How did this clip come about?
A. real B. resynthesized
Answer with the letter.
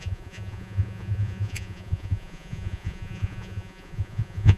B